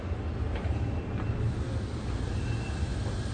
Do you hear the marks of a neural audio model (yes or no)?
no